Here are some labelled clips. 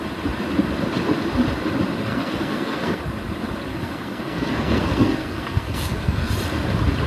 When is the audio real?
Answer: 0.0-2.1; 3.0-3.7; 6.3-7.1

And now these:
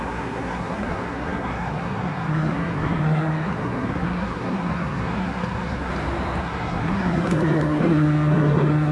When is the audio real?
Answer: 5.9-6.4

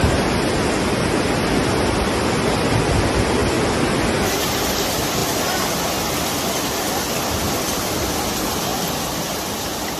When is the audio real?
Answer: 0.0-10.0

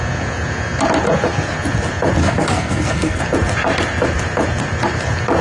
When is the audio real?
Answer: 0.0-2.2; 3.2-5.4